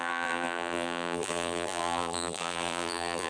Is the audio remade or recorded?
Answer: remade